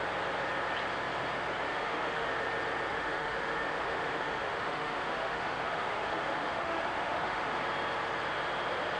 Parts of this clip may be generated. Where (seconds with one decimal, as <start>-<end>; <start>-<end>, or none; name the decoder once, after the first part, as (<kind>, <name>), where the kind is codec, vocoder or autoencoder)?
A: 1.7-2.3 (autoencoder, DAC-VAE); 2.9-7.5